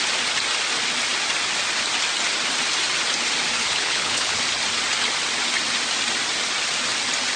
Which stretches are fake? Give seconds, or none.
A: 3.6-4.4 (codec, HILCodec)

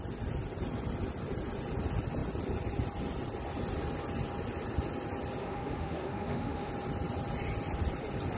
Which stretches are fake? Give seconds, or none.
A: 5.4-6.7 (autoencoder, DAC-VAE)